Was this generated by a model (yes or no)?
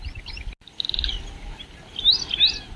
no